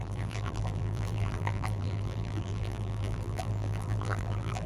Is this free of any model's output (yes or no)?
no